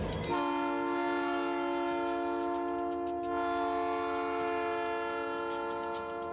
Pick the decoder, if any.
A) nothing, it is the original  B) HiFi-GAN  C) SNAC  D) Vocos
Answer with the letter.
A